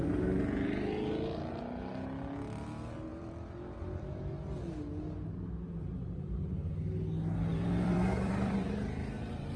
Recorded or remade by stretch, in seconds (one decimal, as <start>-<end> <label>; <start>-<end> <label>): 0.0-3.1 recorded; 3.1-4.0 remade; 4.0-7.5 recorded; 7.5-8.6 remade; 8.6-9.6 recorded